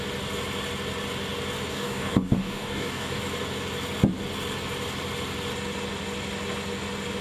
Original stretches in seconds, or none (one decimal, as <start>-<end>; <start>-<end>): 0.0-1.7; 3.2-7.2

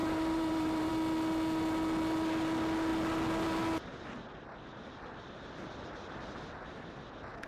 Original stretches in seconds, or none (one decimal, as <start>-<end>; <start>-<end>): 0.9-7.5

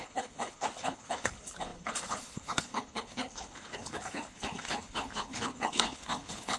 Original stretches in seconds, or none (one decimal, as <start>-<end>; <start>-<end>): none

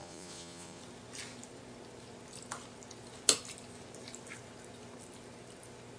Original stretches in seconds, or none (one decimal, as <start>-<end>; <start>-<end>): 0.8-6.0

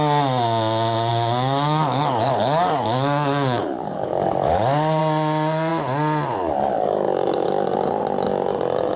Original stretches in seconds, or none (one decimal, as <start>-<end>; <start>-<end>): 0.0-1.1; 5.0-9.0

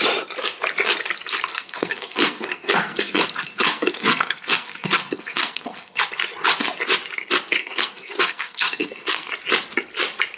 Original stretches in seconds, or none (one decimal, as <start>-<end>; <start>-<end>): 0.0-1.5; 6.0-7.6; 9.3-10.4